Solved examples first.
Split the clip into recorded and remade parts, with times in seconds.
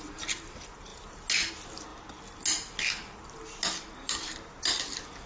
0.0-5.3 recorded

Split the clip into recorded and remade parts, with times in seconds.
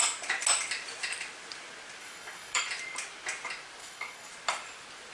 0.0-2.0 recorded; 2.0-2.6 remade; 2.6-3.8 recorded; 3.8-4.3 remade; 4.3-5.1 recorded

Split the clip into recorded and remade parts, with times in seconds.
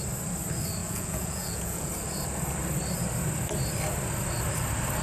0.0-0.8 recorded; 0.8-1.9 remade; 1.9-5.0 recorded